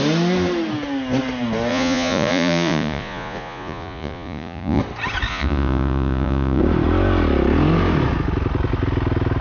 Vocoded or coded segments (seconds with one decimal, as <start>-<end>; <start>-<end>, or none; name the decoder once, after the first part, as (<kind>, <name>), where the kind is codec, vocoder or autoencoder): 1.7-4.8 (vocoder, Vocos); 5.3-6.6